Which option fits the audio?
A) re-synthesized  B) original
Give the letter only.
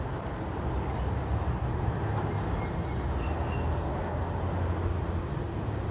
B